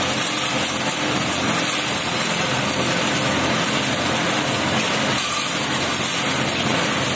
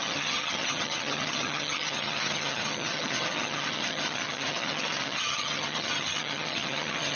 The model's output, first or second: second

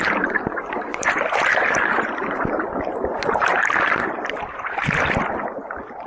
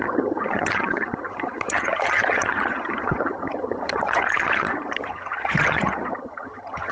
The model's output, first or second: second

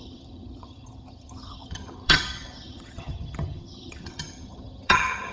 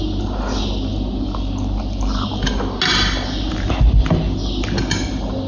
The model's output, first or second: first